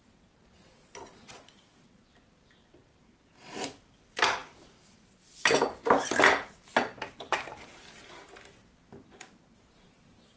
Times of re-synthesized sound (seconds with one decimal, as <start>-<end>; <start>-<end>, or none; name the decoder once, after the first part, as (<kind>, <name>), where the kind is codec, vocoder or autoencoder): none